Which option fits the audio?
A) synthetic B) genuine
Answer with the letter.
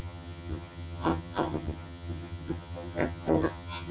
A